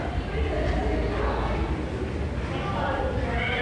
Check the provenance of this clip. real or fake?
real